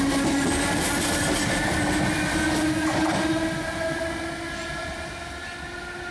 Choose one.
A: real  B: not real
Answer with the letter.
A